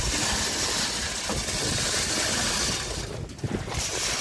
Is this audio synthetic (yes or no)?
no